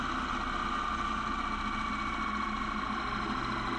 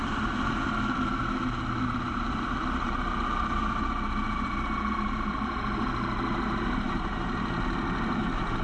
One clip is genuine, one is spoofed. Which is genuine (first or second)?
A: first